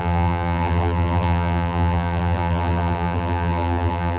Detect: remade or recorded remade